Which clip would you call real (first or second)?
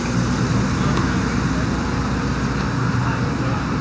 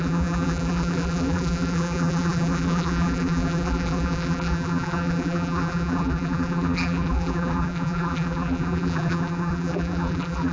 first